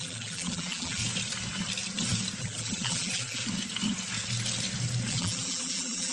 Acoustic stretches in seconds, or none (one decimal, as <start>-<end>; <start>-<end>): 1.0-2.4; 3.4-5.1